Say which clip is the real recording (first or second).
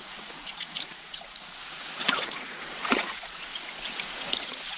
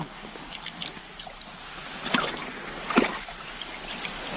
second